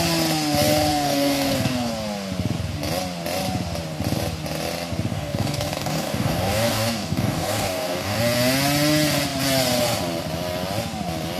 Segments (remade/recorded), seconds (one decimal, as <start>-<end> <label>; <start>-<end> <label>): 0.0-0.9 recorded; 0.9-1.9 remade; 1.9-5.1 recorded; 5.1-8.2 remade; 8.2-11.4 recorded